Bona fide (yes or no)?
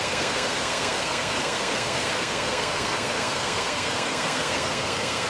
no